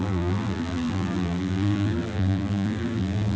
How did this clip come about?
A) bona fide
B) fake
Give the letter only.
B